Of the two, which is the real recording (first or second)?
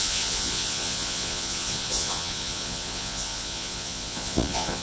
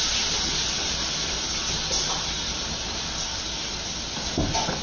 second